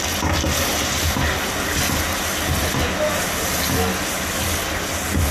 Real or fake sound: real